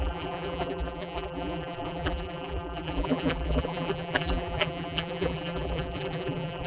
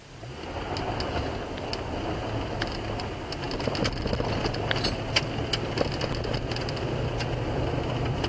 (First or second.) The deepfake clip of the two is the first